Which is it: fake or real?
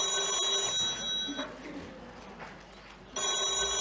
real